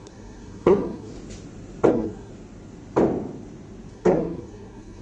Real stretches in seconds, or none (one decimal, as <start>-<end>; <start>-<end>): 1.1-1.9; 2.3-3.9

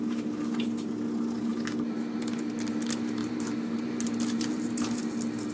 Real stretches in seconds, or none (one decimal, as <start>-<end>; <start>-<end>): 0.0-3.2; 5.0-5.5

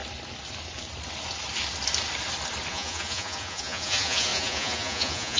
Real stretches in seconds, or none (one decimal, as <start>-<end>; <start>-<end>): 0.0-2.7

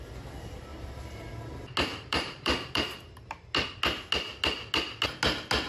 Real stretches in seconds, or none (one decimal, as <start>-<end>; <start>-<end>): 0.0-0.7; 1.3-1.9; 3.2-5.7

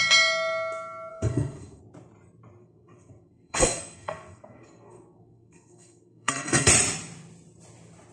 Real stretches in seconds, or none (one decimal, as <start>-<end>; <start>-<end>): 0.0-1.1; 1.8-2.6; 6.7-8.1